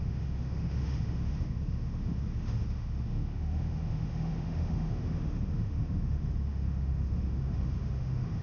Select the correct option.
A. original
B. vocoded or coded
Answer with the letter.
B